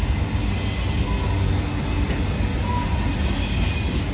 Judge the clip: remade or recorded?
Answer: recorded